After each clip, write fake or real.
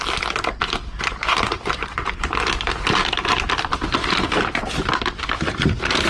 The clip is real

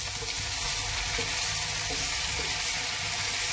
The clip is real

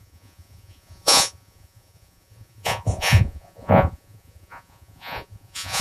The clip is fake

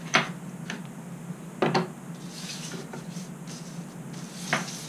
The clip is real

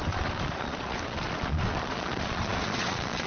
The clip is fake